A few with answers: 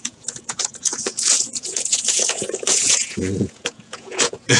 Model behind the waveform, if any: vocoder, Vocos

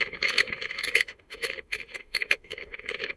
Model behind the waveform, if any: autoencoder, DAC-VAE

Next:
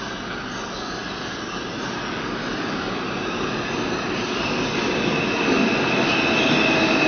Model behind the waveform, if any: none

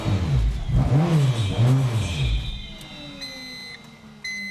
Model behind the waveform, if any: none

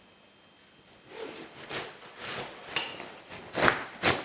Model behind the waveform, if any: none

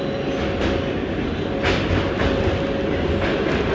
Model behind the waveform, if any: none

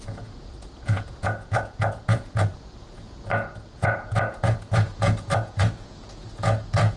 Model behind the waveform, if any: vocoder, Vocos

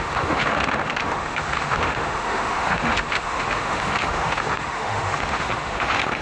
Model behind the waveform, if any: autoencoder, DAC-VAE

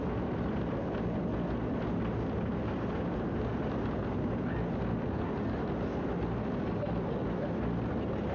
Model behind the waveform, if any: none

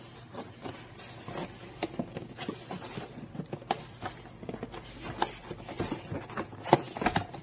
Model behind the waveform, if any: none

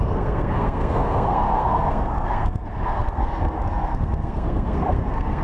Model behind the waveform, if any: codec, SNAC